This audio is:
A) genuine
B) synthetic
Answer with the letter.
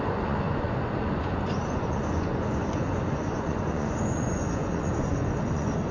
B